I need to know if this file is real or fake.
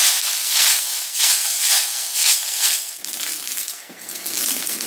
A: fake